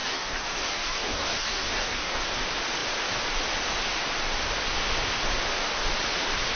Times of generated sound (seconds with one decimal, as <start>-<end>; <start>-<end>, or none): 0.0-2.2